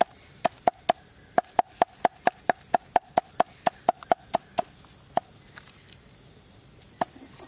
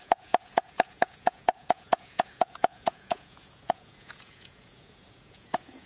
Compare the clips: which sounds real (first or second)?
first